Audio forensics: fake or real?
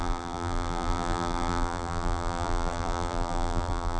fake